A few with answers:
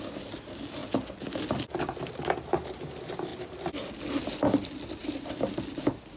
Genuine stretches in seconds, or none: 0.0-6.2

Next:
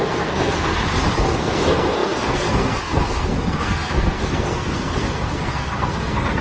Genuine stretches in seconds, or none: 0.7-1.2

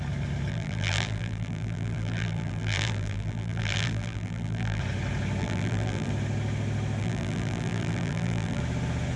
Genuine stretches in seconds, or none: 0.0-0.5; 4.8-5.4; 6.1-7.0; 8.6-9.2

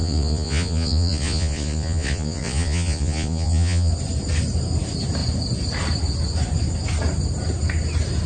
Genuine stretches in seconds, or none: 3.9-8.3

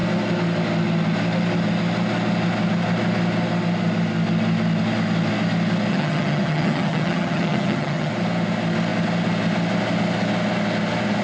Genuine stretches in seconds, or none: 0.0-5.9; 8.1-11.2

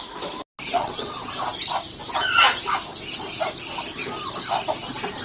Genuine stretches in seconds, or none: 0.0-0.7; 1.2-5.2

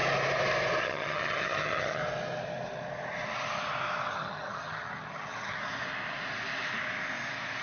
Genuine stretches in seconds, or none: 0.0-0.8; 2.0-4.1; 5.6-7.6